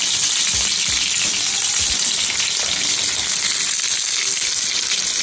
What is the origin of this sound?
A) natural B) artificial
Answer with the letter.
A